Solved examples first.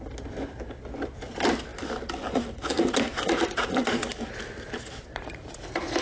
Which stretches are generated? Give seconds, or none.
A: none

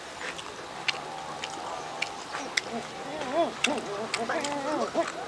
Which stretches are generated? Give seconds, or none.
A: 3.1-4.1 (vocoder, BigVGAN v2)